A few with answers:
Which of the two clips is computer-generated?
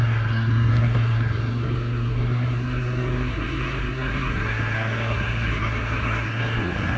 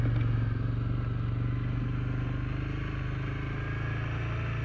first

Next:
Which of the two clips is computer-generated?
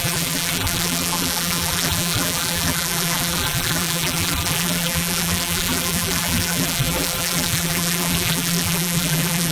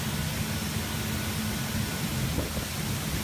first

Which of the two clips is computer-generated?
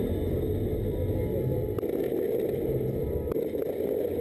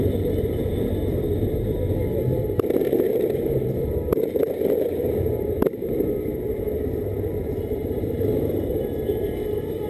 second